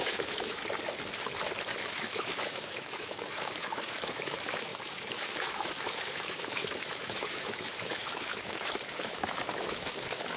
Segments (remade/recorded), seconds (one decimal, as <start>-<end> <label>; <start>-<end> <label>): 0.0-0.6 remade; 0.6-1.8 recorded; 1.8-10.4 remade